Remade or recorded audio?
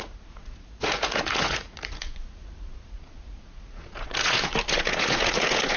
remade